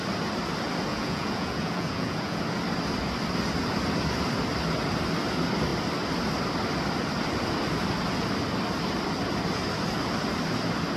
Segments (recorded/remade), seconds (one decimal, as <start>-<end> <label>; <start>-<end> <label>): 0.0-0.9 recorded; 0.9-2.4 remade; 2.4-11.0 recorded

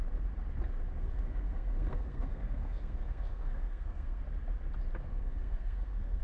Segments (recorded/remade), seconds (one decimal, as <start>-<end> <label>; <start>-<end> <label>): 0.0-1.0 recorded; 1.0-4.2 remade; 4.2-5.1 recorded; 5.1-6.2 remade

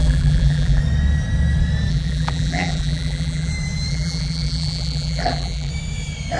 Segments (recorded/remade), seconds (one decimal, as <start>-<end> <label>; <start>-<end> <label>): 0.0-0.8 remade; 0.8-1.9 recorded; 1.9-3.5 remade; 3.5-3.9 recorded; 3.9-5.7 remade; 5.7-6.4 recorded